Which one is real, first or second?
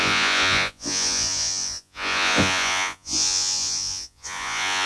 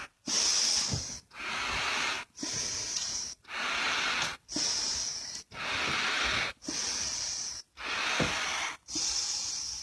second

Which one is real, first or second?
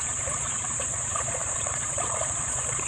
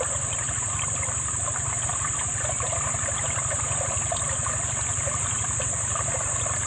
second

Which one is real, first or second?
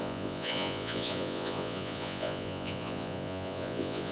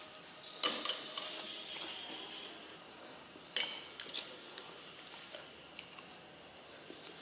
second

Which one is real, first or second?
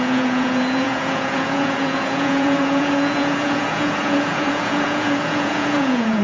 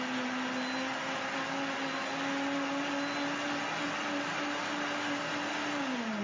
second